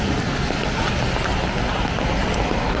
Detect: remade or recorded recorded